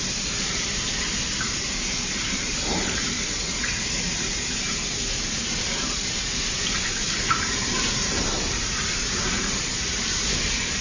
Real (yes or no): no